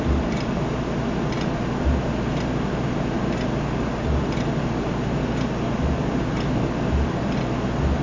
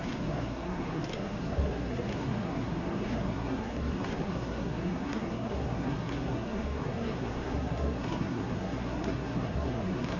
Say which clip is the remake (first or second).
second